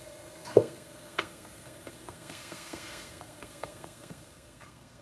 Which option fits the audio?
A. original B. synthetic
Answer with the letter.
B